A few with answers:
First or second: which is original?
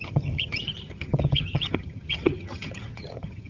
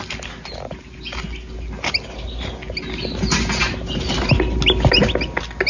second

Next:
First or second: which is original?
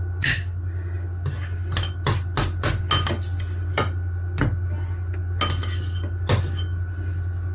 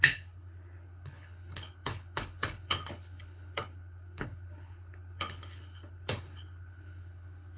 first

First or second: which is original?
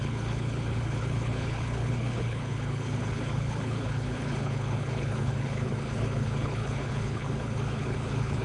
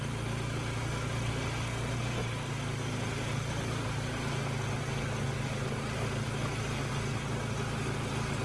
second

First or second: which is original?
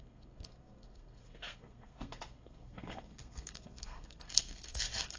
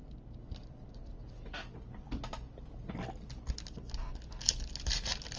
second